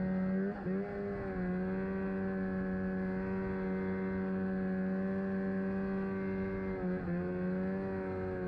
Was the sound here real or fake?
real